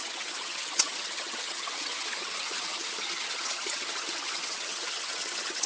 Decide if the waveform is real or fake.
fake